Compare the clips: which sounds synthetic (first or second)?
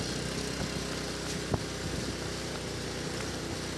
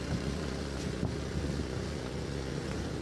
second